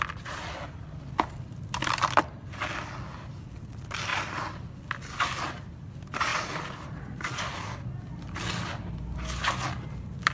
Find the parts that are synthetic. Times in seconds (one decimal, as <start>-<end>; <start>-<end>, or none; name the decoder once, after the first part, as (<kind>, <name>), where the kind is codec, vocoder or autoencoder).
none